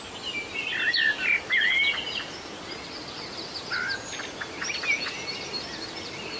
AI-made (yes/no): no